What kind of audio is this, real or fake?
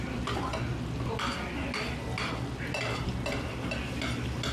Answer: real